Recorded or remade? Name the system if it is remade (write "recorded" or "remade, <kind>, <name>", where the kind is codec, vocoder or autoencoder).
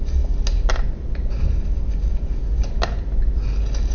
recorded